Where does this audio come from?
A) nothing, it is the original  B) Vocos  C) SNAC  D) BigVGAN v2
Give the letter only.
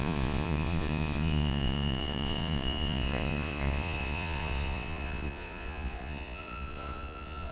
B